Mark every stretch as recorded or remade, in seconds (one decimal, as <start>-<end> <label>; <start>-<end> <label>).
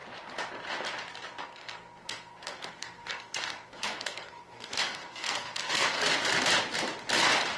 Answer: 0.0-1.4 recorded; 1.4-6.0 remade; 6.0-7.6 recorded